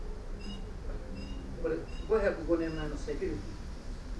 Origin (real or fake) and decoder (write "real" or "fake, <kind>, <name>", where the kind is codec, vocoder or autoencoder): real